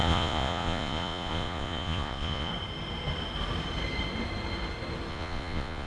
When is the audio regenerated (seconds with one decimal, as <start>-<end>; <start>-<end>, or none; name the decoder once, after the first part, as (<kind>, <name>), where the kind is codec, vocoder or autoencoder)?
0.0-2.5 (vocoder, Vocos); 5.1-5.9